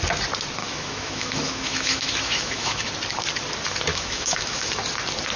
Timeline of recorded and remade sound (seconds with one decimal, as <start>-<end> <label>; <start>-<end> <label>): 0.0-0.6 recorded; 0.6-2.9 remade; 2.9-3.9 recorded; 3.9-4.7 remade; 4.7-5.4 recorded